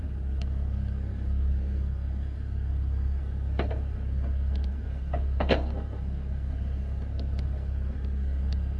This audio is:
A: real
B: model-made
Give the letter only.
B